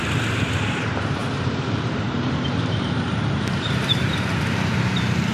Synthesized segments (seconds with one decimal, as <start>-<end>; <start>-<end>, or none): 0.0-5.3